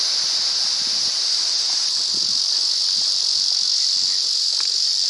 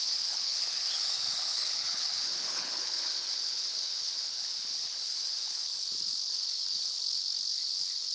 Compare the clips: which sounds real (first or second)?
first